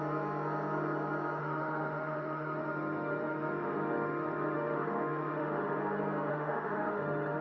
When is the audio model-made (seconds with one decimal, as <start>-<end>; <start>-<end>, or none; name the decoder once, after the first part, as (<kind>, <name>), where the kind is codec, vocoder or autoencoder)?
1.4-5.8 (autoencoder, DAC-VAE); 6.3-7.4

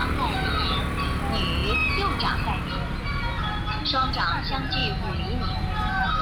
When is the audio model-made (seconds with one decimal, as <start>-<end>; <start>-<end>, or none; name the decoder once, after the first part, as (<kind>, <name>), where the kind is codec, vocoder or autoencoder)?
none

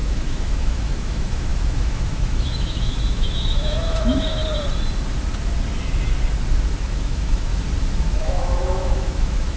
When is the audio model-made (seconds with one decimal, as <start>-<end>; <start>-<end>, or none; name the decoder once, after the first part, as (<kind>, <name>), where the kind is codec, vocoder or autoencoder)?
0.0-4.4 (autoencoder, DAC-VAE); 6.8-7.5; 8.0-9.6

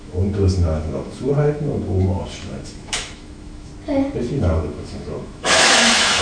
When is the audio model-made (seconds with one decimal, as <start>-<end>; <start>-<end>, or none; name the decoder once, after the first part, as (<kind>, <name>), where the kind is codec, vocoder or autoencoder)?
0.0-3.7 (autoencoder, DAC-VAE); 4.4-6.2